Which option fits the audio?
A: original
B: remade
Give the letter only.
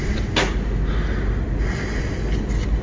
A